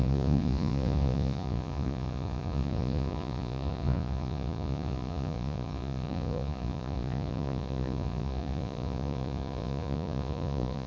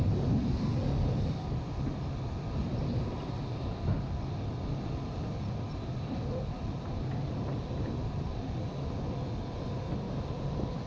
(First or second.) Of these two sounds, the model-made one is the first